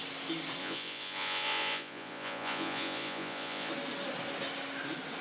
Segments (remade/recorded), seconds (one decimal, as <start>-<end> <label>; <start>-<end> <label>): 0.0-0.6 recorded; 0.6-3.7 remade; 3.7-5.2 recorded